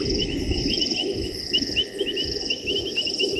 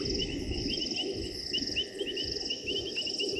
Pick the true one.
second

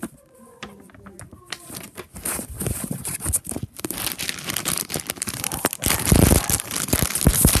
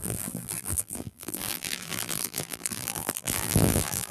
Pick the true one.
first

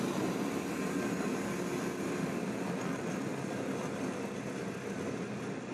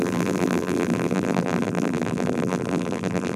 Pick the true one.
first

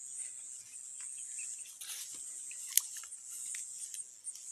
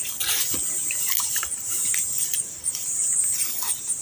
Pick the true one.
first